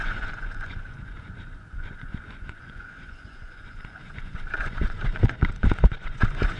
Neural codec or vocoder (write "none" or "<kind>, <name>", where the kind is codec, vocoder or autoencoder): vocoder, Vocos